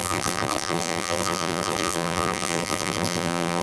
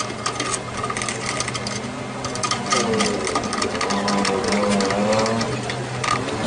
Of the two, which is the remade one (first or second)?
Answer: first